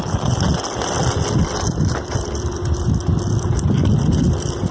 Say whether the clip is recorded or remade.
recorded